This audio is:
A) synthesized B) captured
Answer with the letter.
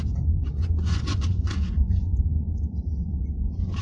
A